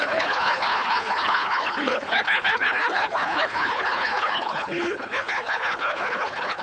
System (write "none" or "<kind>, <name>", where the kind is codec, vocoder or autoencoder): codec, HILCodec